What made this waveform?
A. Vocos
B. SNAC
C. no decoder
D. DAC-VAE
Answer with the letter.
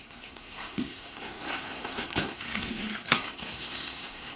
B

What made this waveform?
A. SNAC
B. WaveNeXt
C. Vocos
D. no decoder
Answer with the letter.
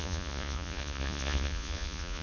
C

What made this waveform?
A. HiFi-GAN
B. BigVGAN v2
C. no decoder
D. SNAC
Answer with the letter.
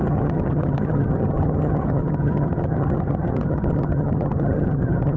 A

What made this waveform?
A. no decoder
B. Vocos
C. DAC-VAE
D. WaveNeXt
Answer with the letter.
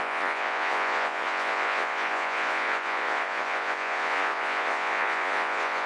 B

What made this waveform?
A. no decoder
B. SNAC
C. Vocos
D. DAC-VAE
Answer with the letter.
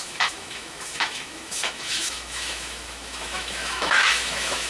D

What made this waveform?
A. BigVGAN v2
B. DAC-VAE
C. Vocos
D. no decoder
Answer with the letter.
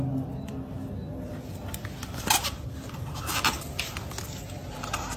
D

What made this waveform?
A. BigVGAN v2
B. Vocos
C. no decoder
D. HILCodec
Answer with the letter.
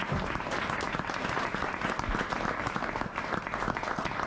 C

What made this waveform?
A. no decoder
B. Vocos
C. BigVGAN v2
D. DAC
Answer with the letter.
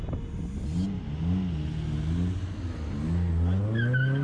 A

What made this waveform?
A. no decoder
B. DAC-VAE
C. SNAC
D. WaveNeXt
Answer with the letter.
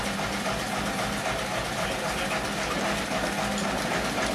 A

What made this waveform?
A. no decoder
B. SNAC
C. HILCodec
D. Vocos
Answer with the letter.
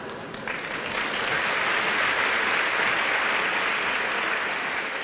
A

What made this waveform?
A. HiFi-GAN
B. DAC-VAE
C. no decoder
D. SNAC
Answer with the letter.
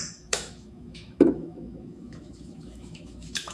B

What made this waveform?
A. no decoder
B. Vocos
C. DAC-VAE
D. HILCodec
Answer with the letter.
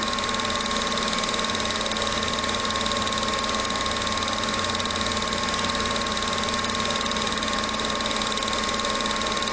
A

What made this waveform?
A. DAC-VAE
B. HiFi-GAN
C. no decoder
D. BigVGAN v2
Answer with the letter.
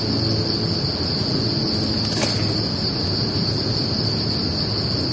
C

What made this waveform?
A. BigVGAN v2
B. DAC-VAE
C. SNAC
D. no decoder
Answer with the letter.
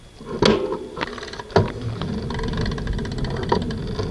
D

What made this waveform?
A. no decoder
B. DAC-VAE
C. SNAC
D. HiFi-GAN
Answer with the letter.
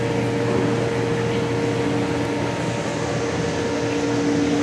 A